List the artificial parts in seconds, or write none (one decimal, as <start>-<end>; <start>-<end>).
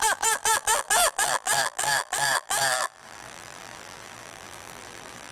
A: 0.0-5.3